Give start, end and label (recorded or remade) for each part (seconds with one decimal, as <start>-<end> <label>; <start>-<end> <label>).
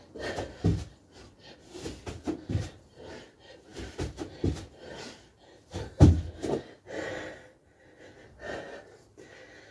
0.0-9.7 recorded